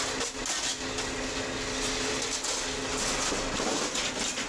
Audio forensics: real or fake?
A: real